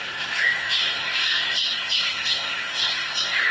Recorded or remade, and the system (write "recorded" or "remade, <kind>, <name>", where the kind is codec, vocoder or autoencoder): remade, codec, SNAC